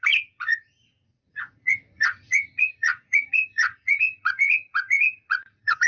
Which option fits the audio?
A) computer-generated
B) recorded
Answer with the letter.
A